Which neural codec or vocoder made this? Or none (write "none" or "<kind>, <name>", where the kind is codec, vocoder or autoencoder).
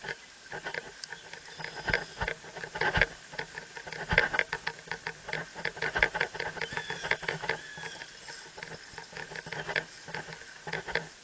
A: none